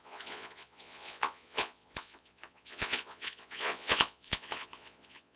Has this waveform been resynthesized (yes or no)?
yes